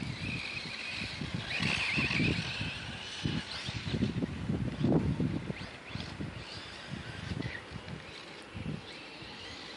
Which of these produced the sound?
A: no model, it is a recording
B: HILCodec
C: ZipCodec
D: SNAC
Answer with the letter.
A